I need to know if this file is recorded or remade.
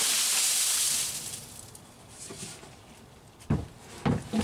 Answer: recorded